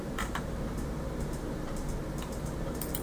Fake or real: fake